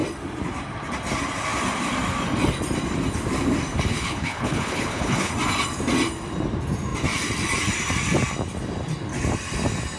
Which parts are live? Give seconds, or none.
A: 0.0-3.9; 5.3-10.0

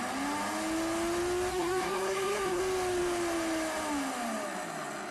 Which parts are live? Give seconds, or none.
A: 0.0-1.5; 2.6-5.1

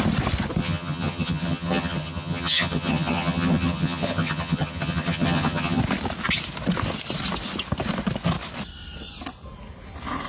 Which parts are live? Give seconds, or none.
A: 0.0-0.6; 5.8-10.3

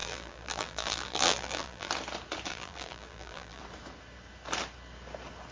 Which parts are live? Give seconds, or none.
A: 1.9-2.5; 3.6-5.5